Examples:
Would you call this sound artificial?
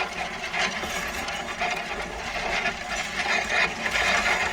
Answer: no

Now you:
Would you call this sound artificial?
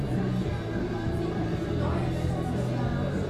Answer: no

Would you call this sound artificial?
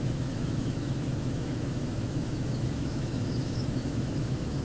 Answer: yes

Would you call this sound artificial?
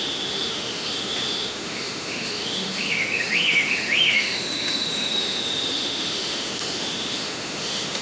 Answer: yes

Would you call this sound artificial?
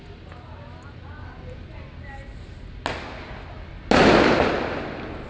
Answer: no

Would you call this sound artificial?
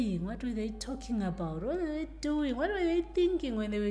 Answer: no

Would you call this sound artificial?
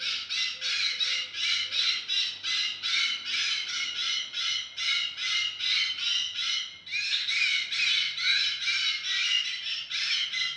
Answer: no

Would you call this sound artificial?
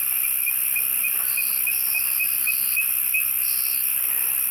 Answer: no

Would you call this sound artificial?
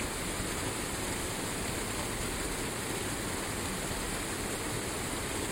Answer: no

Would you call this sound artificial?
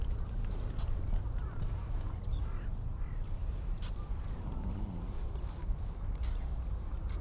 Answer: no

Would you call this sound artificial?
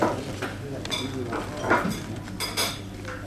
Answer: no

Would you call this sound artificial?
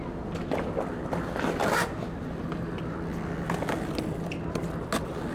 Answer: no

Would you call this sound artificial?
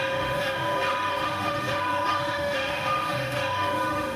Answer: yes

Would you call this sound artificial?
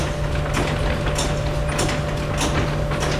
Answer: no